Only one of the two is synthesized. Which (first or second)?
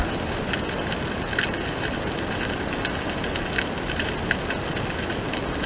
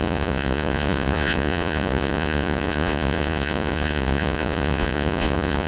second